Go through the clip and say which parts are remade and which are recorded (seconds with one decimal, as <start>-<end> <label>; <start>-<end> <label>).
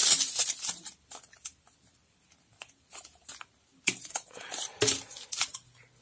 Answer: 0.0-3.3 remade; 3.3-3.7 recorded; 3.7-4.8 remade; 4.8-6.0 recorded